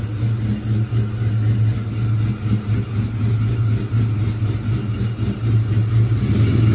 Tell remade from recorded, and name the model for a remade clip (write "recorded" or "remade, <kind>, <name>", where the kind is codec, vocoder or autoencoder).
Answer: recorded